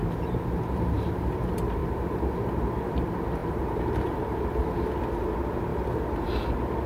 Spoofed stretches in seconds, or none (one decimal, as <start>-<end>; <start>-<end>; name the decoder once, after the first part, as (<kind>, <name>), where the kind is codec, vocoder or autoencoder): 0.0-1.4 (vocoder, BigVGAN v2); 1.8-2.4; 3.4-4.8; 5.7-6.3